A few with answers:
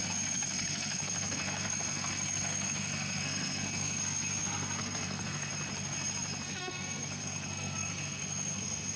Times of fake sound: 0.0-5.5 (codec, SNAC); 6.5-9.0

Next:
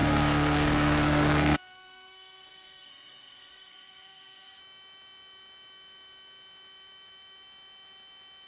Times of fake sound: 0.0-4.6 (codec, SNAC)

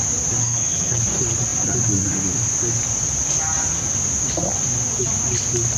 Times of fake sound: 0.4-1.0 (codec, SNAC)

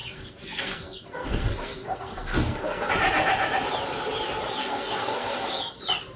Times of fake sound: 0.0-2.9 (codec, SNAC); 4.6-5.8